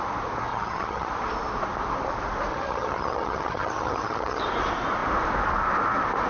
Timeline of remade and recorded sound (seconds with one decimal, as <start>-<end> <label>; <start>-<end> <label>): 0.0-0.5 recorded; 0.5-1.1 remade; 1.1-2.5 recorded; 2.5-4.4 remade; 4.4-6.3 recorded